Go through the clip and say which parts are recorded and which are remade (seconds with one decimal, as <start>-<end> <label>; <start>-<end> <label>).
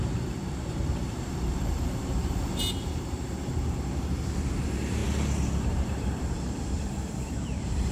0.0-5.0 remade; 5.0-5.6 recorded; 5.6-7.9 remade